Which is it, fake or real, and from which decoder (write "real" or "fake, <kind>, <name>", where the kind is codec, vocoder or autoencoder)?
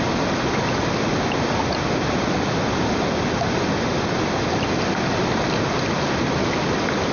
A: real